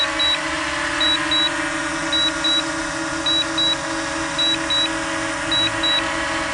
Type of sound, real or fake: real